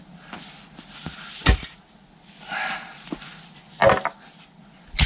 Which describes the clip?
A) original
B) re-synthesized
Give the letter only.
A